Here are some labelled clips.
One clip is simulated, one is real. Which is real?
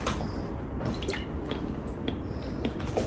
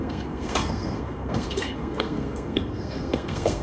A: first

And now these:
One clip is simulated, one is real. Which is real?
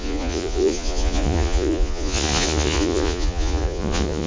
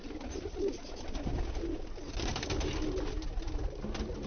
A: second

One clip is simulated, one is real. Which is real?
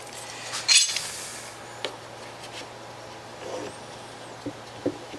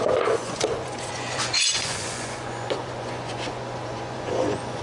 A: first